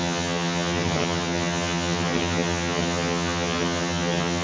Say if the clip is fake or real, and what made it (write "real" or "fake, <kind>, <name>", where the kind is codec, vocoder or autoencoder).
fake, vocoder, HiFi-GAN